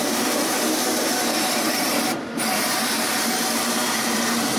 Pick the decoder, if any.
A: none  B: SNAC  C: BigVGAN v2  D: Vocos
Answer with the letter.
C